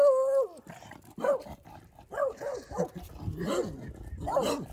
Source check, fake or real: real